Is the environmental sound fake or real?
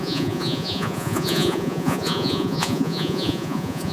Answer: fake